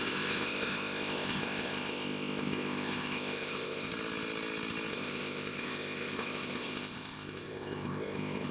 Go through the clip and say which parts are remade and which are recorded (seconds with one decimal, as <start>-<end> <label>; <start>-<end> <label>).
0.0-3.9 remade; 3.9-4.9 recorded; 4.9-8.5 remade